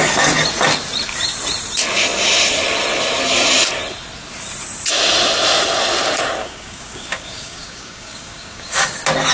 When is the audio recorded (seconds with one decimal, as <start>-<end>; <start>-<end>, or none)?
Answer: 0.0-6.4; 8.9-9.3